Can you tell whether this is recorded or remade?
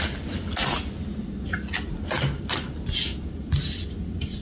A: recorded